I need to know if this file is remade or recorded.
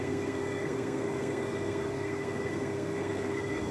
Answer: remade